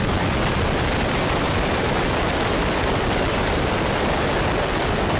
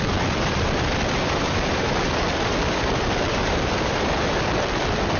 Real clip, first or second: first